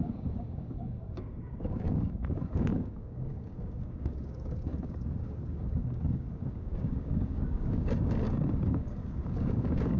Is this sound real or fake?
fake